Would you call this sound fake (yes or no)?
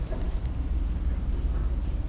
no